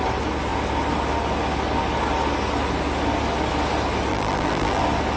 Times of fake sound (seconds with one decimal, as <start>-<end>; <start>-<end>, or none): 4.1-4.8